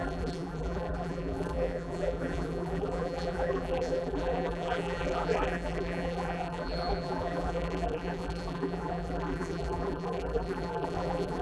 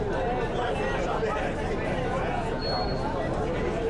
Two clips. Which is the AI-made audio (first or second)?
first